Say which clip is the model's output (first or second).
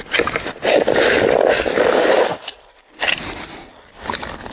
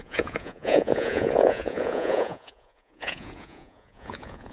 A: second